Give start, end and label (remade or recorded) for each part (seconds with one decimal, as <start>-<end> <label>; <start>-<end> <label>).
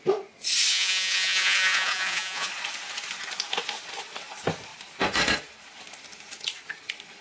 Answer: 0.0-0.7 recorded; 0.7-2.5 remade; 2.5-7.2 recorded